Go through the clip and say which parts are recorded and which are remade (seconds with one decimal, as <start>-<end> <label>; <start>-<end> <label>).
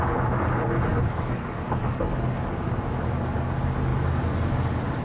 0.0-0.9 recorded; 0.9-2.8 remade; 2.8-5.0 recorded